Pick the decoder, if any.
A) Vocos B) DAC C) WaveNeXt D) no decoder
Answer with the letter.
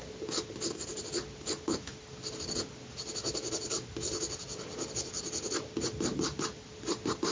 D